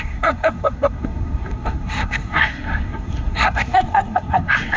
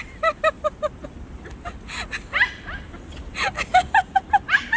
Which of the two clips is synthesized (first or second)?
first